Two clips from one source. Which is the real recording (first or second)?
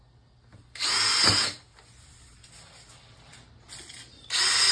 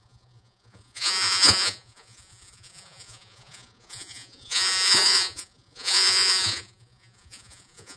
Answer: first